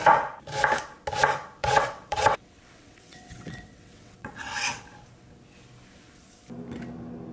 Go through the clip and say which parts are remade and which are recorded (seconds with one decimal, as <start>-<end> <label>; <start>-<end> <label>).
0.0-1.6 recorded; 1.6-4.8 remade; 4.8-7.3 recorded